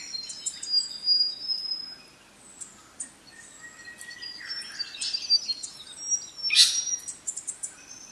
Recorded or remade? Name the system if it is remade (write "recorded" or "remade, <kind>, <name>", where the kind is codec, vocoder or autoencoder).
recorded